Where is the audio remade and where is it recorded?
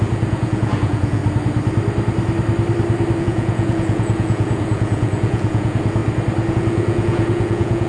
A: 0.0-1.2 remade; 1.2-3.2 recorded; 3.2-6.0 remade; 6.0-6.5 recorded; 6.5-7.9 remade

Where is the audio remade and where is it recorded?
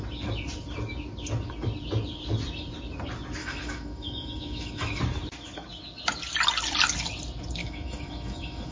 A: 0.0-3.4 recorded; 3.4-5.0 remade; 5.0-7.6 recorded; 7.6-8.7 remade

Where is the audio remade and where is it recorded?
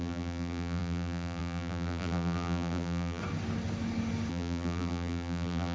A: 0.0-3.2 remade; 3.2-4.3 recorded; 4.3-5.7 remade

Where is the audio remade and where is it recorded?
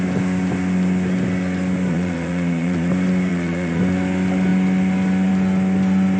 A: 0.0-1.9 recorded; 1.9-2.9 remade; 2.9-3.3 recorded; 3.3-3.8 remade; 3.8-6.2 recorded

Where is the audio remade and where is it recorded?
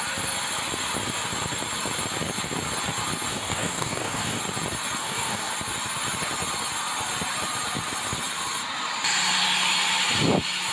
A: 0.0-3.3 recorded; 3.3-4.4 remade; 4.4-5.0 recorded; 5.0-5.5 remade; 5.5-10.7 recorded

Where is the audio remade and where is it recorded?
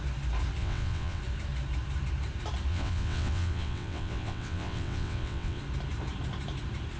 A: 0.0-0.6 recorded; 0.6-1.2 remade; 1.2-2.7 recorded; 2.7-5.6 remade; 5.6-7.0 recorded